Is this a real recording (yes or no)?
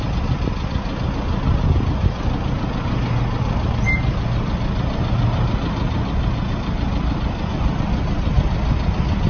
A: yes